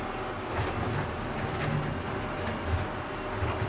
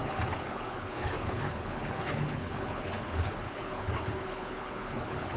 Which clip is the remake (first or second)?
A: second